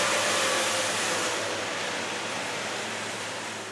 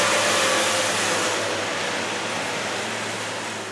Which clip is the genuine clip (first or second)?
second